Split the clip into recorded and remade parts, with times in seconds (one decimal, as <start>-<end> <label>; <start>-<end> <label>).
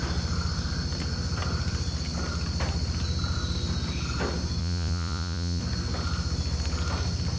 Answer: 0.0-4.6 recorded; 4.6-5.6 remade; 5.6-7.4 recorded